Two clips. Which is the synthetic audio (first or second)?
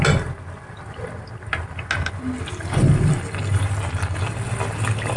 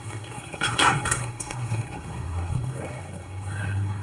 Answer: second